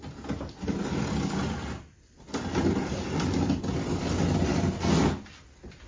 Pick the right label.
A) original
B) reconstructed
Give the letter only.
A